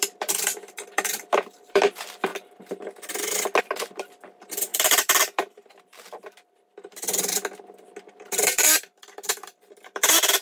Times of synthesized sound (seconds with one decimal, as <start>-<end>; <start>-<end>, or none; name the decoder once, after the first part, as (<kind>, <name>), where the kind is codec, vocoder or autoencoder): 0.0-2.3 (vocoder, BigVGAN v2); 3.6-7.1; 8.1-10.4

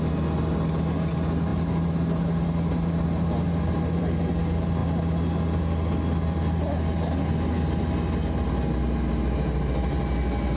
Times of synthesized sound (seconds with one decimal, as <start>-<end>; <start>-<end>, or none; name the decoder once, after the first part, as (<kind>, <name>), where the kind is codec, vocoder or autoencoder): none

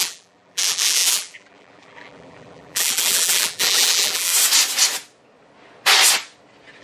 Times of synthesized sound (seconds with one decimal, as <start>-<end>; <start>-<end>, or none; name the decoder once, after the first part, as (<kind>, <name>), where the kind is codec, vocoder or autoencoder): 0.0-4.3 (vocoder, BigVGAN v2)

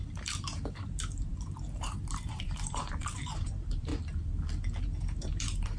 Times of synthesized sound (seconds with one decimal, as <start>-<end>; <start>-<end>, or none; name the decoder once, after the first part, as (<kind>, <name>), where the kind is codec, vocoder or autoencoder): 0.0-3.9 (vocoder, BigVGAN v2); 4.8-5.8

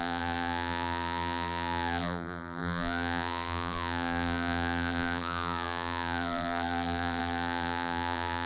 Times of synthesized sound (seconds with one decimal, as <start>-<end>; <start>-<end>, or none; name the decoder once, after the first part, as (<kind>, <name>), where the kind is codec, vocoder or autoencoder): 0.0-8.5 (vocoder, BigVGAN v2)

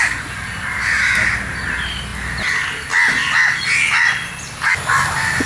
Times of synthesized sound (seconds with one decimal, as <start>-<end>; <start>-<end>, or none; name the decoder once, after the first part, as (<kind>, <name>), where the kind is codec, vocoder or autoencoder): 0.0-1.6 (vocoder, BigVGAN v2)

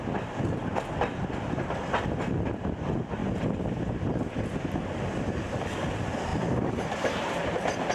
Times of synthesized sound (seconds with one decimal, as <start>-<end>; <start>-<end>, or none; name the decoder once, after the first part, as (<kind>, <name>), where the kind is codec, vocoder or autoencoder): 3.2-3.7 (vocoder, BigVGAN v2); 6.3-7.9

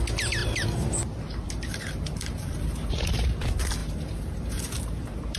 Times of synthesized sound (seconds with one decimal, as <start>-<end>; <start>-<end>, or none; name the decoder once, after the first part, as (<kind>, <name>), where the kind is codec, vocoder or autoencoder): 0.4-2.9 (vocoder, BigVGAN v2); 3.8-5.4